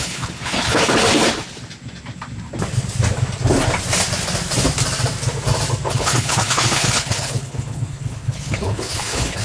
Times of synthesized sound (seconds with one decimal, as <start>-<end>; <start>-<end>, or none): 0.0-0.8; 5.9-9.4